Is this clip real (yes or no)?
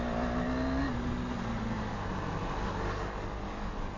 yes